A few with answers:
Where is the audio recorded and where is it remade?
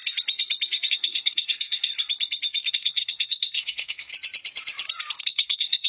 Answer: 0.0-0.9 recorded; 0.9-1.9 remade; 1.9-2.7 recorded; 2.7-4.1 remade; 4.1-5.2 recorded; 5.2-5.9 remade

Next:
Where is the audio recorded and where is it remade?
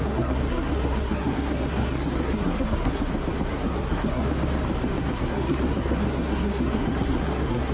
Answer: 0.0-3.0 remade; 3.0-3.5 recorded; 3.5-4.3 remade; 4.3-5.0 recorded; 5.0-7.7 remade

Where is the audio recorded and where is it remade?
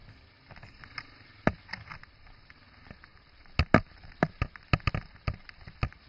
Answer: 0.0-6.1 recorded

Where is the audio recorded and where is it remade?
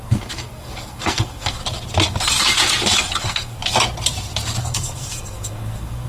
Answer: 0.0-1.6 remade; 1.6-3.2 recorded; 3.2-3.6 remade; 3.6-4.6 recorded; 4.6-6.1 remade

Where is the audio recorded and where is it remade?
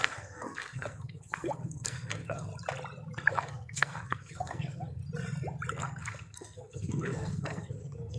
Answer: 0.0-2.5 remade; 2.5-3.3 recorded; 3.3-5.0 remade; 5.0-5.7 recorded; 5.7-8.2 remade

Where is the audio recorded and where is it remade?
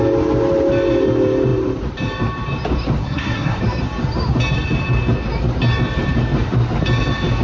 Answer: 0.0-3.0 recorded; 3.0-3.6 remade; 3.6-7.4 recorded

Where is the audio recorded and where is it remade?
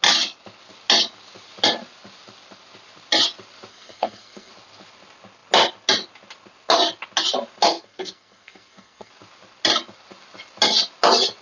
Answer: 0.0-3.7 recorded; 3.7-4.5 remade; 4.5-7.7 recorded; 7.7-9.1 remade; 9.1-11.4 recorded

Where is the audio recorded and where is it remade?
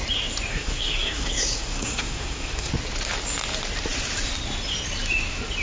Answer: 0.0-0.5 recorded; 0.5-2.7 remade; 2.7-5.6 recorded